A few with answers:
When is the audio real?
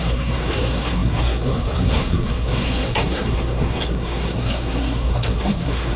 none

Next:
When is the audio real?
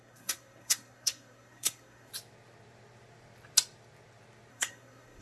2.1-4.5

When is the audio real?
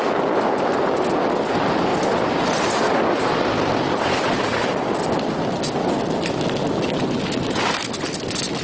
0.0-8.6